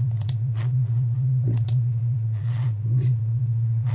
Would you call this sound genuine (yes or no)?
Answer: no